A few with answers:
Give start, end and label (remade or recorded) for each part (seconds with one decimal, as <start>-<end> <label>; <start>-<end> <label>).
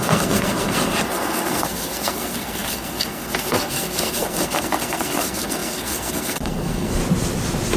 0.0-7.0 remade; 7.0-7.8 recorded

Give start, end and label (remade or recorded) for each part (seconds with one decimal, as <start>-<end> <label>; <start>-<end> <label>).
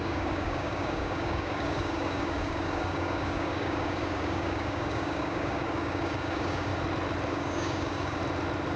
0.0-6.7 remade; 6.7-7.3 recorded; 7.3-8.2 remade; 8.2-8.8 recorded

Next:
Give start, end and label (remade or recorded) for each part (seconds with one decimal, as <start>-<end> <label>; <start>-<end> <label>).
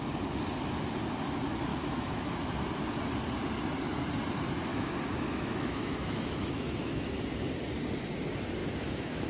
0.0-1.7 recorded; 1.7-2.7 remade; 2.7-4.7 recorded; 4.7-7.1 remade; 7.1-8.6 recorded; 8.6-9.3 remade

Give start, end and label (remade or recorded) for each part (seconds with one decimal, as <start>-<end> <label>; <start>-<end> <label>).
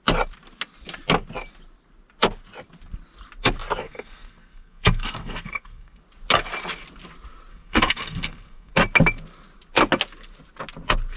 0.0-3.8 recorded; 3.8-6.0 remade; 6.0-7.5 recorded; 7.5-8.7 remade; 8.7-11.2 recorded